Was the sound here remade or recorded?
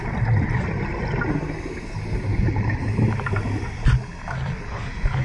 recorded